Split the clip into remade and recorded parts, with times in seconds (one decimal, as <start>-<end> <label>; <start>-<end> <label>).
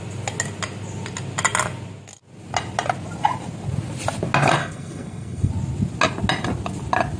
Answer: 0.0-4.6 recorded; 4.6-5.5 remade; 5.5-7.2 recorded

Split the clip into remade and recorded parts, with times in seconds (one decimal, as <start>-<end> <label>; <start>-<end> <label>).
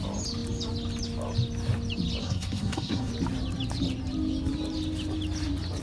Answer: 0.0-2.2 recorded; 2.2-3.1 remade; 3.1-5.8 recorded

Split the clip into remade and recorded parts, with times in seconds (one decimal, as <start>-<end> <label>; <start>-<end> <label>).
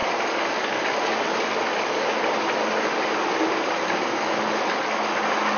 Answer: 0.0-4.1 recorded; 4.1-4.7 remade; 4.7-5.6 recorded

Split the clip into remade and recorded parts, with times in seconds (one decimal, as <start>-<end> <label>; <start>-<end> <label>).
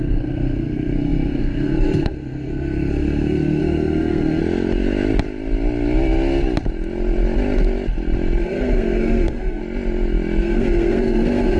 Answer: 0.0-4.4 remade; 4.4-8.4 recorded; 8.4-9.6 remade; 9.6-10.4 recorded; 10.4-11.6 remade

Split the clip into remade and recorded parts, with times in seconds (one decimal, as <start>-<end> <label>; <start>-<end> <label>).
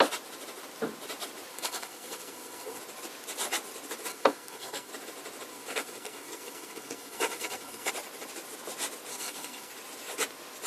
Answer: 0.0-1.5 recorded; 1.5-2.8 remade; 2.8-4.1 recorded; 4.1-4.9 remade; 4.9-5.5 recorded; 5.5-7.9 remade; 7.9-9.1 recorded; 9.1-9.7 remade; 9.7-10.7 recorded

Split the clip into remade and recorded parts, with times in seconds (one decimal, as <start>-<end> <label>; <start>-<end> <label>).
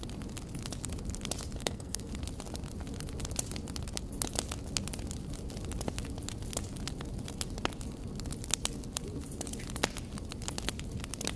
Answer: 0.0-1.6 recorded; 1.6-2.1 remade; 2.1-11.4 recorded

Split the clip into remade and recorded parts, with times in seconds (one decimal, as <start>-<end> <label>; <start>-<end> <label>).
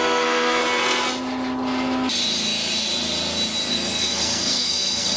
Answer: 0.0-0.6 remade; 0.6-3.7 recorded; 3.7-5.2 remade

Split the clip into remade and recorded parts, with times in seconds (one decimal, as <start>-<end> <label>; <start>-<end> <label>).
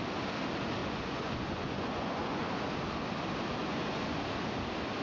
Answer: 0.0-0.8 recorded; 0.8-2.5 remade; 2.5-3.6 recorded; 3.6-4.2 remade; 4.2-5.0 recorded